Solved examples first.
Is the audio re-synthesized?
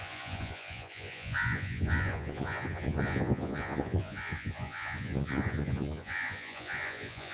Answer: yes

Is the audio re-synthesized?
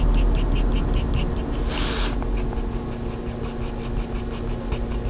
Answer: no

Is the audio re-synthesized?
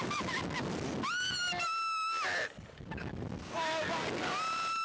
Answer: no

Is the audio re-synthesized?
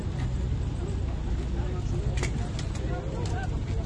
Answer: no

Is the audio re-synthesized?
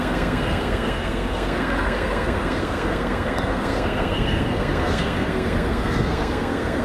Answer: yes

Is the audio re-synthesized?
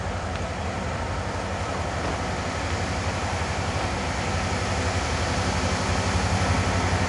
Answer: no